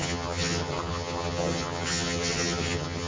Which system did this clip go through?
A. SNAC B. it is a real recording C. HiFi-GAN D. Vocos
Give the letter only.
C